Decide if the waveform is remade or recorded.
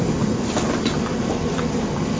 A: recorded